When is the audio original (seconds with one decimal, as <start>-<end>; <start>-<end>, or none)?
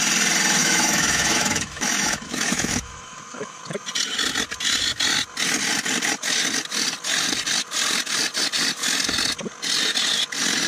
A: 0.0-0.6; 3.6-10.7